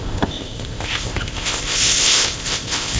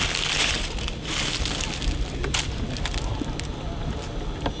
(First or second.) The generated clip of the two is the first